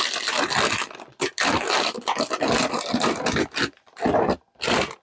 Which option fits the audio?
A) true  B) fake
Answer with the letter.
B